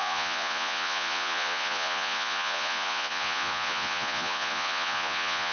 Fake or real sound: fake